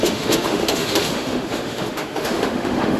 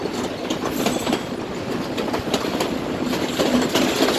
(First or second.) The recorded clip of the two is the second